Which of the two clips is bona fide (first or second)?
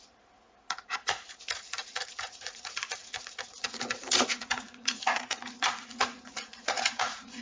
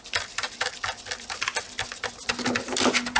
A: second